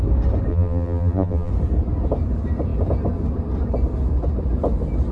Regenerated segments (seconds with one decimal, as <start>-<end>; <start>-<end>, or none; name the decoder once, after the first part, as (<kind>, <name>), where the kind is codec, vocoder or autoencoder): 0.5-1.5 (vocoder, BigVGAN v2)